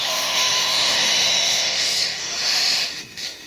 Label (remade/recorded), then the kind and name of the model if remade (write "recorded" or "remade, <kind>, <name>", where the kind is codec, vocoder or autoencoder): remade, autoencoder, DAC-VAE